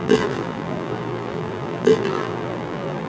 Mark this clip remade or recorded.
remade